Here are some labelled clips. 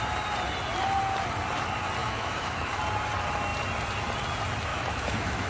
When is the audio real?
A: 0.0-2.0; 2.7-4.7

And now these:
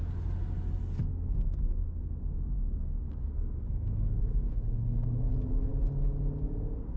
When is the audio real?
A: 0.0-1.1; 5.3-7.0

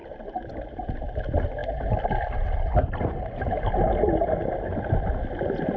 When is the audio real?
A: 0.9-5.8

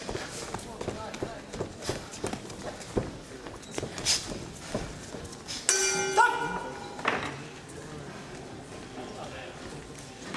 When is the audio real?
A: 0.0-10.4